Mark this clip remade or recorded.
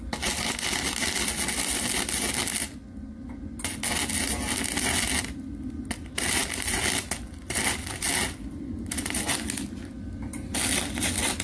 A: recorded